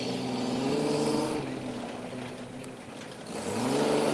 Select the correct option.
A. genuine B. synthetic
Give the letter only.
A